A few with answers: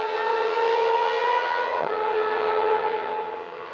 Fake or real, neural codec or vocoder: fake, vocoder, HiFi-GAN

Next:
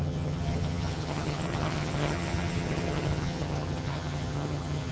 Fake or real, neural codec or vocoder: fake, vocoder, HiFi-GAN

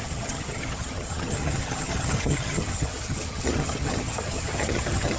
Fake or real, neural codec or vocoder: fake, vocoder, HiFi-GAN